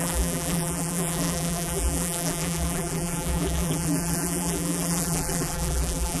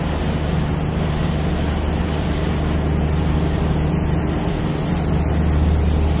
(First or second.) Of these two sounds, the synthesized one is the first